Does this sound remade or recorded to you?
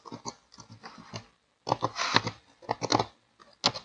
recorded